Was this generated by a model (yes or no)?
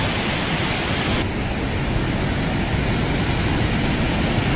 no